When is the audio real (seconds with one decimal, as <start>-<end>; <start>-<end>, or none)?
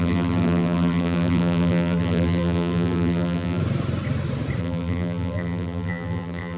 3.6-4.6